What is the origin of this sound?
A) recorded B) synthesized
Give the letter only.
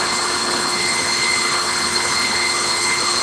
B